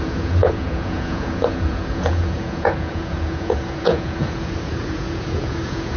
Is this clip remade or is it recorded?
remade